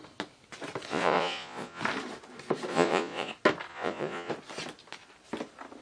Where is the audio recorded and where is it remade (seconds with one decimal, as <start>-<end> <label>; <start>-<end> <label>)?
0.0-0.9 recorded; 0.9-1.8 remade; 1.8-2.7 recorded; 2.7-3.3 remade; 3.3-3.7 recorded; 3.7-4.3 remade; 4.3-5.8 recorded